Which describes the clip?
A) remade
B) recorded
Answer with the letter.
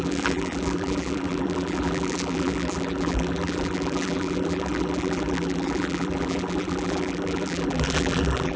A